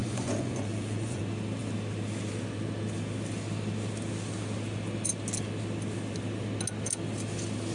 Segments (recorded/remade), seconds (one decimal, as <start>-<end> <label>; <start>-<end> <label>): 0.0-1.2 remade; 1.2-7.7 recorded